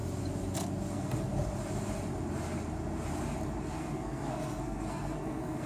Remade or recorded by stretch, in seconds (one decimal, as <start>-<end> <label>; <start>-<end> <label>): 0.0-0.9 recorded; 0.9-1.3 remade; 1.3-3.6 recorded; 3.6-5.7 remade

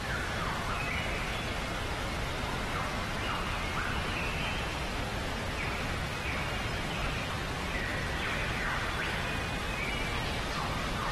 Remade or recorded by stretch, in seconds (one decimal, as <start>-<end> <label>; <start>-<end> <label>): 0.0-3.7 recorded; 3.7-4.4 remade; 4.4-11.1 recorded

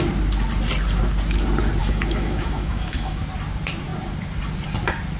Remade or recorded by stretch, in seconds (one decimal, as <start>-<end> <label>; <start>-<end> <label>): 0.0-1.8 recorded; 1.8-3.2 remade; 3.2-5.2 recorded

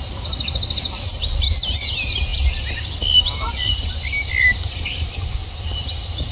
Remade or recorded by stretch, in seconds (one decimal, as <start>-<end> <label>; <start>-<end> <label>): 0.0-6.3 recorded

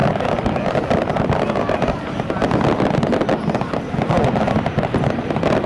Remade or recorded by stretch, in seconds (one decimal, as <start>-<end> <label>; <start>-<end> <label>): 0.0-5.7 recorded